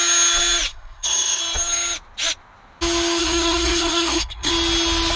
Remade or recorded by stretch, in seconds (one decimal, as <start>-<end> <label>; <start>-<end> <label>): 0.0-0.7 recorded; 0.7-1.4 remade; 1.4-3.2 recorded; 3.2-4.5 remade; 4.5-5.2 recorded